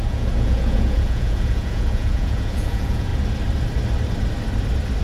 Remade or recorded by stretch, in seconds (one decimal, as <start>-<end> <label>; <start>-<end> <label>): 0.0-3.1 remade; 3.1-5.0 recorded